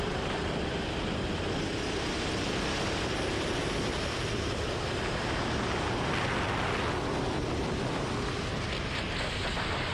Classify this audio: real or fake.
real